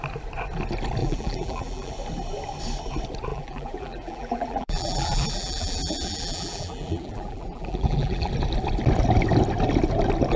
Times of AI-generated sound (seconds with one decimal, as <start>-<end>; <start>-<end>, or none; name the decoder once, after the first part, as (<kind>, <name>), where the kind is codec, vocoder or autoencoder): 1.0-1.9 (vocoder, BigVGAN v2); 3.3-8.3